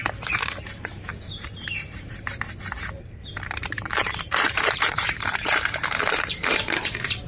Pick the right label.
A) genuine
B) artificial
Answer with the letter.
B